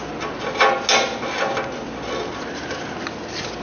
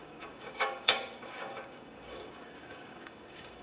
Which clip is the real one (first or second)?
first